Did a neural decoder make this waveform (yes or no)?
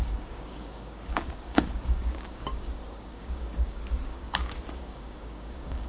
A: yes